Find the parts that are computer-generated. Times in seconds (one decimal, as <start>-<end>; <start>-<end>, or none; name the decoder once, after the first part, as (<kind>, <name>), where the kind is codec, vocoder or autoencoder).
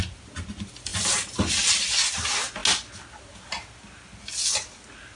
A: none